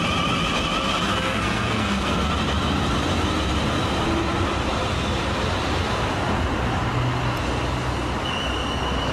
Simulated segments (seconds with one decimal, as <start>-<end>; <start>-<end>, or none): 1.1-2.3